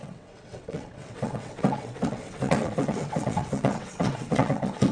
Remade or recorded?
remade